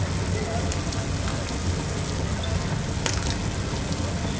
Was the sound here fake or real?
real